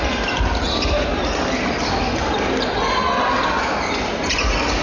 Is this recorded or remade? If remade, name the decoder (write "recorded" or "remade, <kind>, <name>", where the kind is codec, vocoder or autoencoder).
recorded